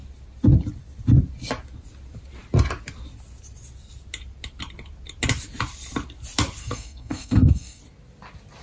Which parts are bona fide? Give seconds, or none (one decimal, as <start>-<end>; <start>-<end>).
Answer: 0.0-6.6; 7.8-8.6